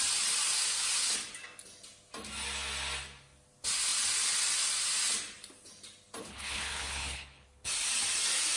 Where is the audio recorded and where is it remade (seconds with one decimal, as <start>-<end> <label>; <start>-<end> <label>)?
0.0-6.2 recorded; 6.2-7.7 remade; 7.7-8.6 recorded